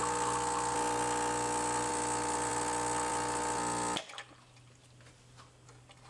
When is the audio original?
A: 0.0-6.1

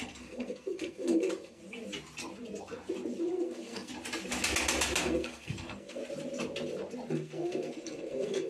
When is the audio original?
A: 1.6-3.2; 3.9-5.0; 6.0-7.1